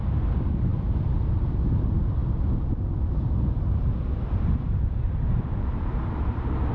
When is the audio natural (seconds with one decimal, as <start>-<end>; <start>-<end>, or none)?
none